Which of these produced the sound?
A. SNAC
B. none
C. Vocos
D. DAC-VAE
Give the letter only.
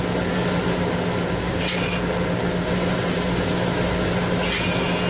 B